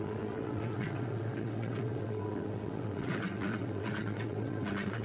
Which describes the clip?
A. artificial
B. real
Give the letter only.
A